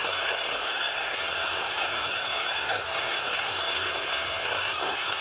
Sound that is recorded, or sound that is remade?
remade